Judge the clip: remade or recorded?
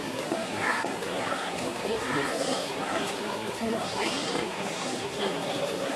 remade